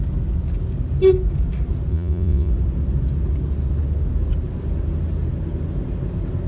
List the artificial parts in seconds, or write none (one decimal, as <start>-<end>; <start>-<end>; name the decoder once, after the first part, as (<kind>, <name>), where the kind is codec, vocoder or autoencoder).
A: 1.9-2.5 (vocoder, Vocos)